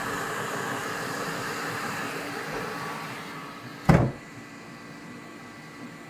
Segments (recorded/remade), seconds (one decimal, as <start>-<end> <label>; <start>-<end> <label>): 0.0-0.8 recorded; 0.8-2.3 remade; 2.3-6.1 recorded